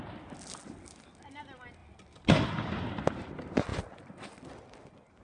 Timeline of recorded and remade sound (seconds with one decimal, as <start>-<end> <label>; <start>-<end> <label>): 0.0-3.7 recorded; 3.7-4.4 remade; 4.4-5.2 recorded

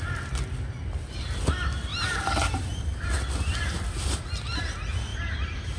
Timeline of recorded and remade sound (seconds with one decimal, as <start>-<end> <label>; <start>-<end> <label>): 0.0-1.9 recorded; 1.9-3.0 remade; 3.0-5.1 recorded; 5.1-5.8 remade

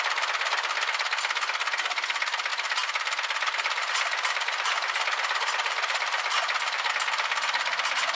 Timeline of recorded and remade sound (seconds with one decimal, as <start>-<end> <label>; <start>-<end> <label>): 0.0-2.5 recorded; 2.5-6.9 remade; 6.9-8.1 recorded